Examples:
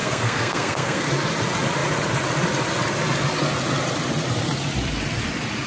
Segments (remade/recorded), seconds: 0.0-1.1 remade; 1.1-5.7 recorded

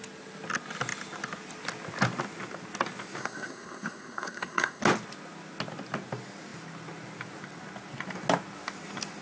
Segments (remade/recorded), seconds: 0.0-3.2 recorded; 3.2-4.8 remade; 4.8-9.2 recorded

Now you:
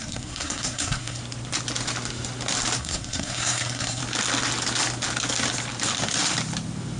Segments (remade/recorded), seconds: 0.0-1.2 remade; 1.2-2.8 recorded; 2.8-4.0 remade; 4.0-7.0 recorded

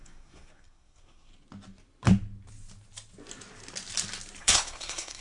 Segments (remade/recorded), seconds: 0.0-1.3 remade; 1.3-4.4 recorded; 4.4-5.2 remade

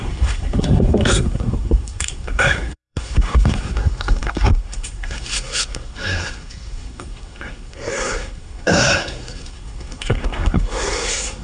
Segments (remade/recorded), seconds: 0.0-11.4 remade

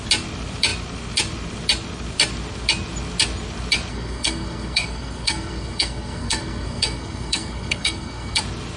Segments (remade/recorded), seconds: 0.0-3.9 recorded; 3.9-8.4 remade; 8.4-8.8 recorded